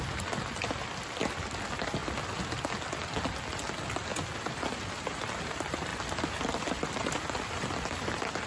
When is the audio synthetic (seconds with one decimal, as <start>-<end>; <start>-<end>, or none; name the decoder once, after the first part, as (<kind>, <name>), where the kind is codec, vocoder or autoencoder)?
0.0-2.0 (vocoder, BigVGAN v2); 5.4-5.9; 6.4-8.5